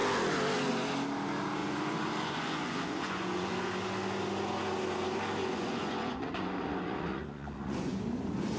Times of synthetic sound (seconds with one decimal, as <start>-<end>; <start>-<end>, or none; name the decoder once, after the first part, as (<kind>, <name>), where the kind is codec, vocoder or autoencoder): 1.6-3.5 (vocoder, Vocos); 5.4-8.0